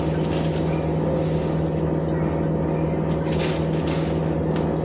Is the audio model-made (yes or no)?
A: no